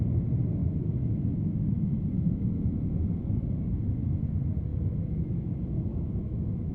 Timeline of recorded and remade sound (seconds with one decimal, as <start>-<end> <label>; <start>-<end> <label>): 0.0-0.6 recorded; 0.6-2.6 remade; 2.6-4.7 recorded; 4.7-5.5 remade; 5.5-5.9 recorded; 5.9-6.7 remade